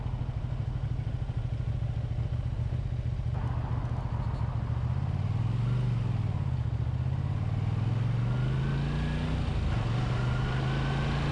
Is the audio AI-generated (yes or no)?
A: no